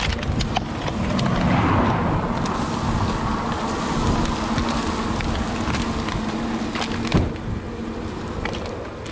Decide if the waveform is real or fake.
real